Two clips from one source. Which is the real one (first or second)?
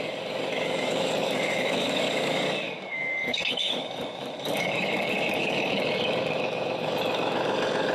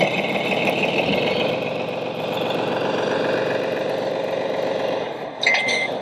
second